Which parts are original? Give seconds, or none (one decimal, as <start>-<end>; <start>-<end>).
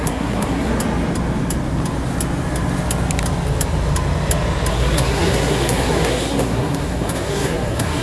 0.7-4.7